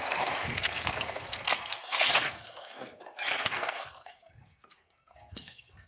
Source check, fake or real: fake